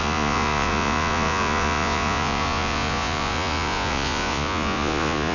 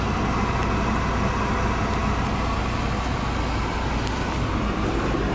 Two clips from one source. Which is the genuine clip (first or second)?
second